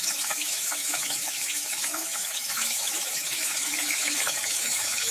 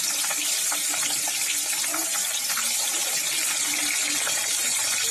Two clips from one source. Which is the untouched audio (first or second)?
second